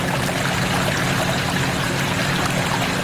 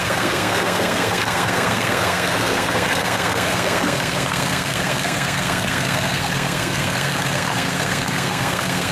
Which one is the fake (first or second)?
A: second